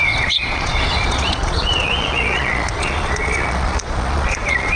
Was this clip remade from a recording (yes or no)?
yes